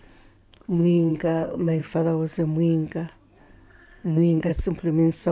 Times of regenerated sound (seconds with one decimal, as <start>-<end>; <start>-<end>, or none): 0.0-1.8; 3.4-4.5